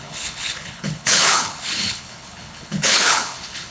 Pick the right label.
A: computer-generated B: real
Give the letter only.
A